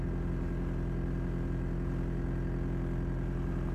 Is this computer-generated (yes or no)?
no